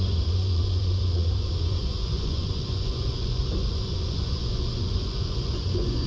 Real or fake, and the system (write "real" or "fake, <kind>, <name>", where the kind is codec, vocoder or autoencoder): fake, vocoder, Vocos